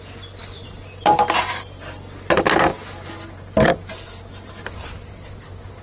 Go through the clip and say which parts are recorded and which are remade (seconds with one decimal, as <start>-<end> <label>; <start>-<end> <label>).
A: 0.0-5.8 recorded